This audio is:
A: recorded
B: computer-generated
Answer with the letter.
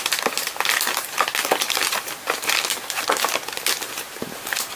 A